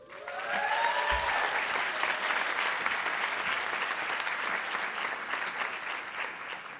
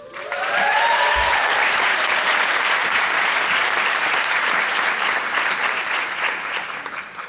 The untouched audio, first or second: first